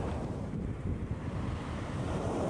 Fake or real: fake